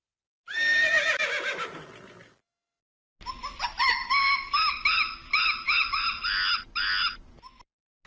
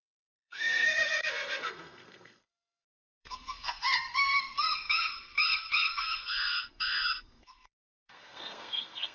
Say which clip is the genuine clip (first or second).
first